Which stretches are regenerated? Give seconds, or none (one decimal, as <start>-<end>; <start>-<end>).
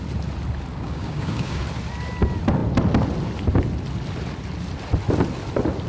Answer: 0.7-1.6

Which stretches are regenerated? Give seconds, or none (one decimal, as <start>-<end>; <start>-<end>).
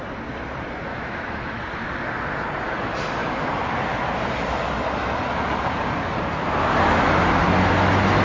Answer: 0.9-1.6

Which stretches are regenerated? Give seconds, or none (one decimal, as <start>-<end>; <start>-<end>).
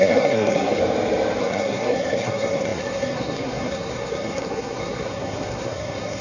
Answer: 0.0-0.8; 1.4-6.2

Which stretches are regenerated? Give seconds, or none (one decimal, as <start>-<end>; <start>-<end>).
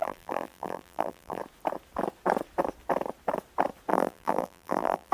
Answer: 0.0-1.4; 3.9-5.1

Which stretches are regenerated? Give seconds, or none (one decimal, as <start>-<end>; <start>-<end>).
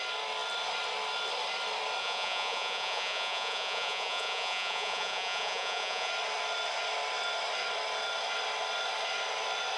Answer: 2.0-6.1